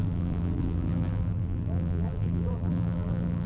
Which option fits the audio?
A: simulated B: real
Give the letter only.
A